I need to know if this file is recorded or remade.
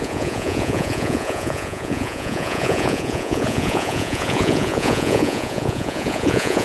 remade